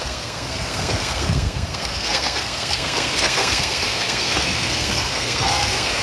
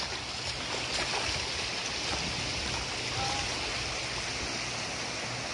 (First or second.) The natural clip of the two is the second